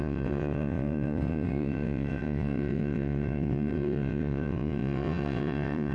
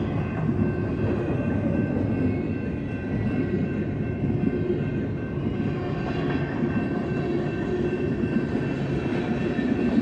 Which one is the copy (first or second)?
first